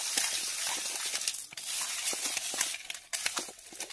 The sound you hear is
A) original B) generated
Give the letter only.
A